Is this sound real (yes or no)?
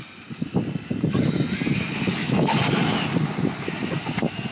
yes